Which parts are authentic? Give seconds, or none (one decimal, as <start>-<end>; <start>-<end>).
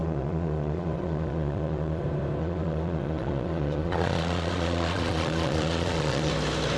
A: 2.0-2.4; 6.3-6.8